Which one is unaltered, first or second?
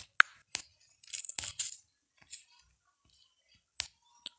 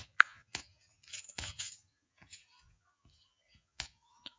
first